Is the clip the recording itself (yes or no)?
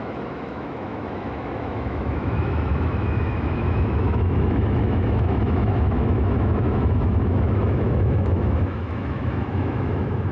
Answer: no